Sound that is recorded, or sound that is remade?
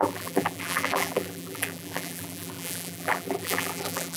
remade